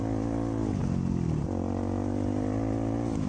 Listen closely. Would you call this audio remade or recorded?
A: recorded